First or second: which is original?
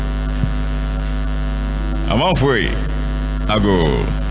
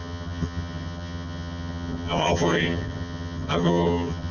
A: first